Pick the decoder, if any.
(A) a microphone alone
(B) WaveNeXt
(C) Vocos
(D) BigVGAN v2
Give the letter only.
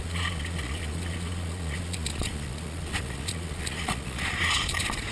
C